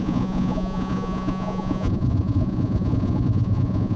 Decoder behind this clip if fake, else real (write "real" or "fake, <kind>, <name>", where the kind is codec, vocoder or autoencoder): fake, vocoder, Vocos